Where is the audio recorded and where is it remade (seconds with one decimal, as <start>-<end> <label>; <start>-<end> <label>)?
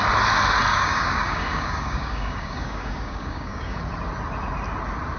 0.0-0.7 recorded; 0.7-3.8 remade; 3.8-5.2 recorded